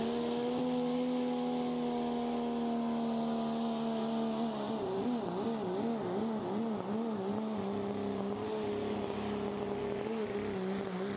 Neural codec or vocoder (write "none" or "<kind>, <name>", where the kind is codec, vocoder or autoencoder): none